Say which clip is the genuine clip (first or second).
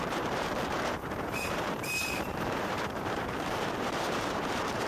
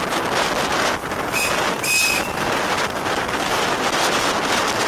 second